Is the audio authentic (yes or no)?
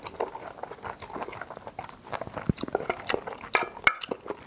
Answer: yes